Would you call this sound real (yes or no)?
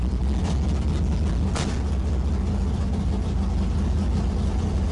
yes